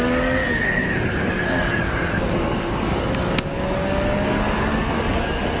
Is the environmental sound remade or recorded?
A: remade